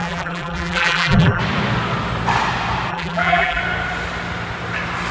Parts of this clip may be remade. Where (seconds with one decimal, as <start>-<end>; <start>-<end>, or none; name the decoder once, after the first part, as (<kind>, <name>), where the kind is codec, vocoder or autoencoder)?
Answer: 0.0-1.4 (vocoder, BigVGAN v2); 2.9-3.6